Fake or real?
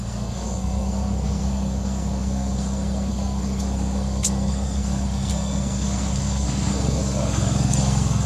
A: fake